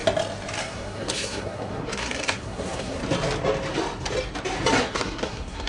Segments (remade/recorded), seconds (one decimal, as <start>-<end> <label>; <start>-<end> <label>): 0.0-0.6 recorded; 0.6-3.0 remade; 3.0-4.8 recorded; 4.8-5.7 remade